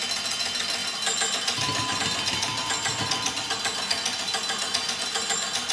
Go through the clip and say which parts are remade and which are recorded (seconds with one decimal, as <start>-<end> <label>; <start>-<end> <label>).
0.0-5.7 recorded